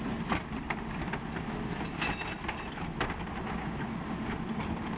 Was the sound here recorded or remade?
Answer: recorded